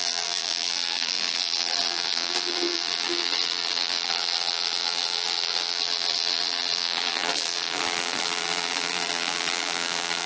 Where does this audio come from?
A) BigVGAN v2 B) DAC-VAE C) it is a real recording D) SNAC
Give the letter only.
A